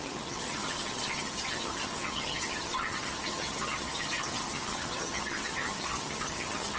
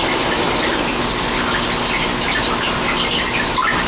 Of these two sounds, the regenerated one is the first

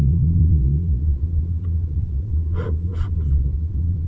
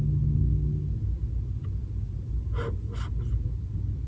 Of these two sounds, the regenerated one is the first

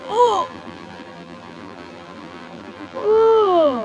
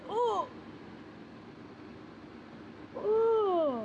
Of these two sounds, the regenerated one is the first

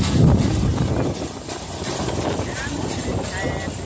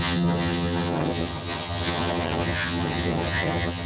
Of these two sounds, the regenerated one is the second